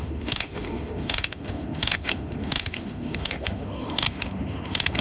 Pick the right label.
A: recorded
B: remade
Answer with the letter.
B